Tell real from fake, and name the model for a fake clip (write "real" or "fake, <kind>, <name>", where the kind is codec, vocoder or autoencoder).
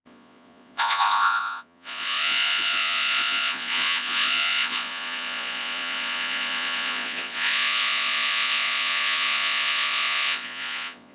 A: fake, vocoder, Vocos